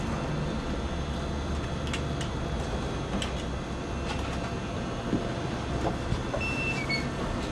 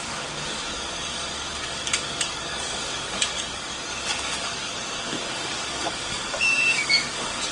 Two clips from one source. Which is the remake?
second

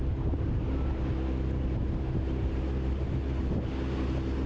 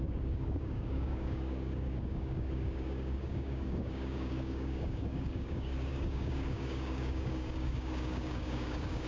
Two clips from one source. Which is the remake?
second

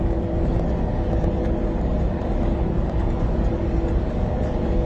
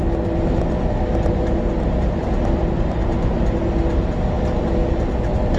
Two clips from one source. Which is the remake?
first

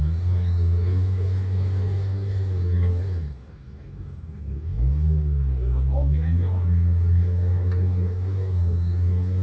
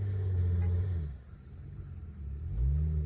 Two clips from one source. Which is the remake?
first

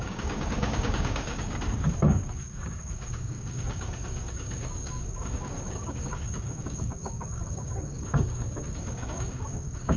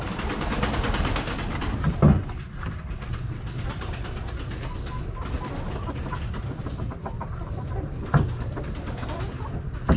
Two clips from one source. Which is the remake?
first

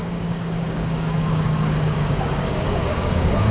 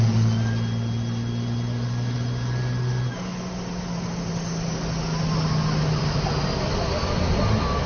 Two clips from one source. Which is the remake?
first